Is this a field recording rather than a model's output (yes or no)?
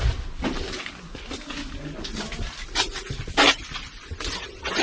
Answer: yes